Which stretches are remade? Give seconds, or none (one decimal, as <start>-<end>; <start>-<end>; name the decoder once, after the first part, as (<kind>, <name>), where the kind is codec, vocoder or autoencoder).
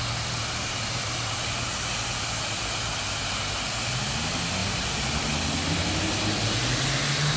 none